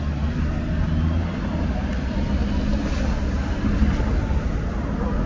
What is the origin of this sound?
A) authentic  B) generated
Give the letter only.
A